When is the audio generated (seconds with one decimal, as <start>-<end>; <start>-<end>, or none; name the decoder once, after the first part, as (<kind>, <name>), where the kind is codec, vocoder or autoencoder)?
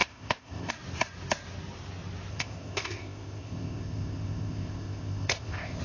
0.0-0.7 (codec, ZipCodec); 2.3-5.8